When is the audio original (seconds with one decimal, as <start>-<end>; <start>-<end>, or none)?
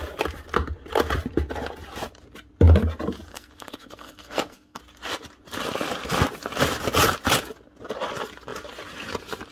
0.0-3.3; 4.8-9.5